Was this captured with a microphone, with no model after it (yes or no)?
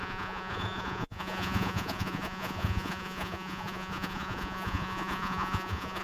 no